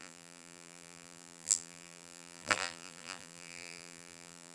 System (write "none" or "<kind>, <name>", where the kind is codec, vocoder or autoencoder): vocoder, BigVGAN v2